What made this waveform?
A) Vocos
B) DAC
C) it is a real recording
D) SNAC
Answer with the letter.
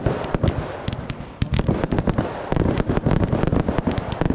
C